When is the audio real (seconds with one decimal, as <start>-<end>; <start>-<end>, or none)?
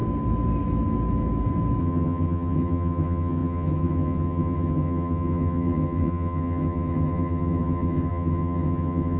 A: 0.0-1.8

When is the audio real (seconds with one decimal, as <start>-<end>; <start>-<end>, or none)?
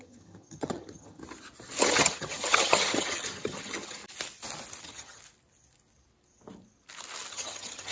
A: 1.2-1.8; 4.0-4.8; 5.2-7.3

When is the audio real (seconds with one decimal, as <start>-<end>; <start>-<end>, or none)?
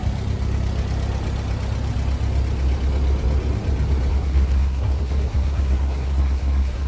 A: 0.0-4.1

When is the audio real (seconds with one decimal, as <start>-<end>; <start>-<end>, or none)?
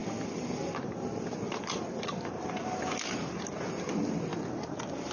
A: 3.1-4.3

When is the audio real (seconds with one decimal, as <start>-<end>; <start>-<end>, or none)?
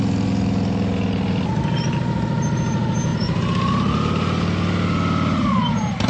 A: 0.0-6.1